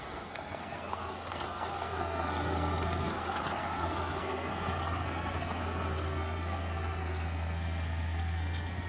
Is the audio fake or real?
fake